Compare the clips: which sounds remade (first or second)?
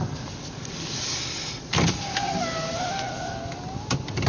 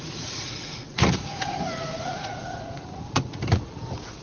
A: second